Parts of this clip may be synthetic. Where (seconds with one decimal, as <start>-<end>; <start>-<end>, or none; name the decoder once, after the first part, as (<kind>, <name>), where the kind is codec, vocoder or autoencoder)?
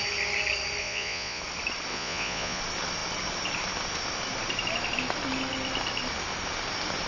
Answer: 0.8-1.4 (vocoder, Vocos); 1.9-2.6